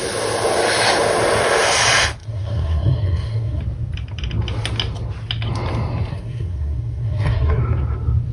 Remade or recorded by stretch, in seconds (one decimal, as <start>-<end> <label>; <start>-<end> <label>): 0.0-2.2 recorded; 2.2-3.6 remade; 3.6-6.1 recorded; 6.1-7.6 remade; 7.6-8.3 recorded